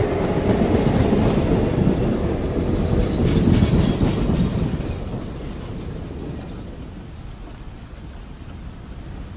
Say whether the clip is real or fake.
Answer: real